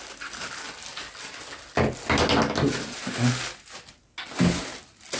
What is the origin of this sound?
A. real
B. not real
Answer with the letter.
A